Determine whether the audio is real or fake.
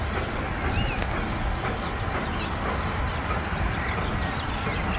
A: real